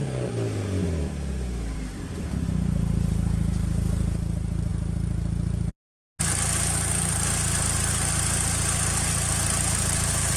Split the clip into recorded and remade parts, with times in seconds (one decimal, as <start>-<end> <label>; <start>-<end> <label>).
0.0-1.0 recorded; 1.0-4.7 remade; 4.7-6.2 recorded; 6.2-10.4 remade